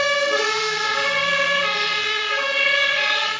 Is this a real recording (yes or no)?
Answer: no